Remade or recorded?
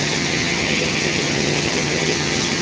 remade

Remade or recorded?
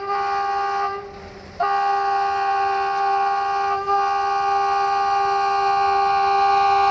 recorded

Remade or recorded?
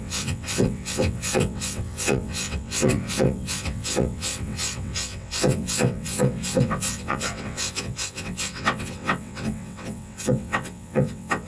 remade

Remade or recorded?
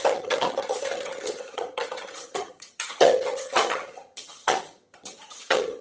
remade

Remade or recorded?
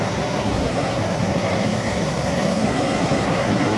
remade